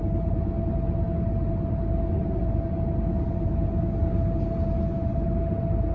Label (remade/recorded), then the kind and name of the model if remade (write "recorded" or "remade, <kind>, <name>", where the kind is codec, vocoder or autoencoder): recorded